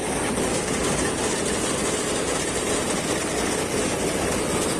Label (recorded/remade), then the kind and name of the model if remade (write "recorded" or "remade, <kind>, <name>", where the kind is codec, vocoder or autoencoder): recorded